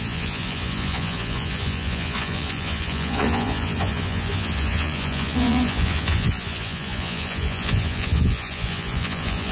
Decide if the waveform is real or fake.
fake